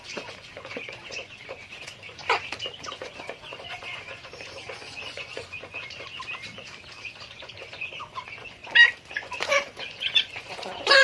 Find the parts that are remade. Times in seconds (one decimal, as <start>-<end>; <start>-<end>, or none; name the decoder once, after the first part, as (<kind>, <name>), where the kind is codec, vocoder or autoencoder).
0.0-2.2 (vocoder, Vocos); 2.9-6.1; 7.3-8.6; 9.1-11.0